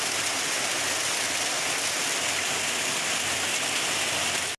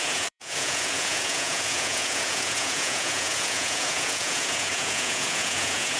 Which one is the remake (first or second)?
second